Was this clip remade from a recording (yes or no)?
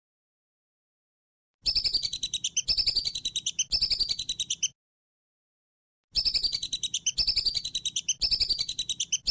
no